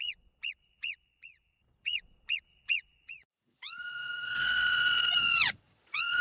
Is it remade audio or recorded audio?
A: remade